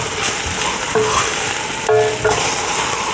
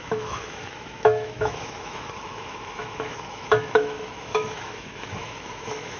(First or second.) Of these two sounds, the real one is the first